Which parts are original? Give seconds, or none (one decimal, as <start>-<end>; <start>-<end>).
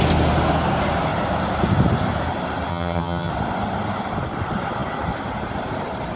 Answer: 0.0-2.7; 3.3-6.2